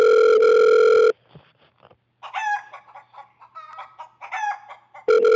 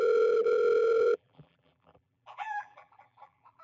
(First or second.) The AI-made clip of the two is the second